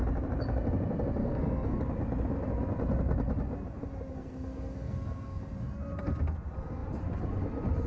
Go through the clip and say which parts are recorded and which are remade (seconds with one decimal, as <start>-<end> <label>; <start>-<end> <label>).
0.0-1.2 recorded; 1.2-1.8 remade; 1.8-4.1 recorded; 4.1-5.4 remade; 5.4-7.9 recorded

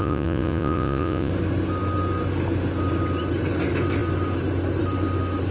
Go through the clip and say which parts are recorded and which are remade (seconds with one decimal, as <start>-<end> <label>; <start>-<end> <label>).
0.0-1.3 remade; 1.3-5.5 recorded

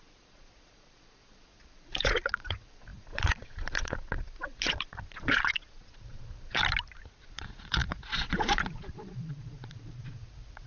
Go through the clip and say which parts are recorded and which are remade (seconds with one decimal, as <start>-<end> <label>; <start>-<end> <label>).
0.0-6.6 remade; 6.6-7.2 recorded; 7.2-10.7 remade

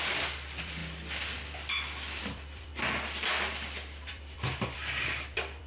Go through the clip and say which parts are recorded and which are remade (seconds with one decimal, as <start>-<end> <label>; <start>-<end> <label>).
0.0-0.8 remade; 0.8-2.2 recorded; 2.2-2.7 remade; 2.7-4.1 recorded; 4.1-5.7 remade

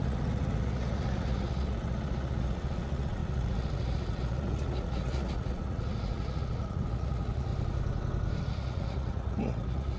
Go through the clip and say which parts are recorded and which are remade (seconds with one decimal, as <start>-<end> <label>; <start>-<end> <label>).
0.0-7.5 remade; 7.5-8.4 recorded; 8.4-10.0 remade

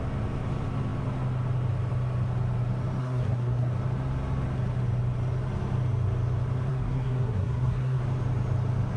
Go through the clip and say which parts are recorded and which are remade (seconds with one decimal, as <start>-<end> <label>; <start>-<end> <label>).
0.0-3.0 recorded; 3.0-3.7 remade; 3.7-6.7 recorded; 6.7-8.0 remade; 8.0-9.0 recorded

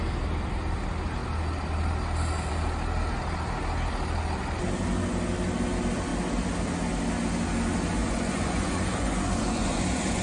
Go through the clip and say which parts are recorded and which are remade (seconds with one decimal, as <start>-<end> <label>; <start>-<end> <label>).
0.0-8.0 recorded; 8.0-10.2 remade

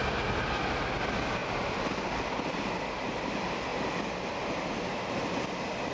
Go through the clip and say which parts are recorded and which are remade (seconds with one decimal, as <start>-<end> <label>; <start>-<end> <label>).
0.0-5.9 recorded